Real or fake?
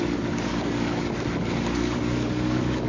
fake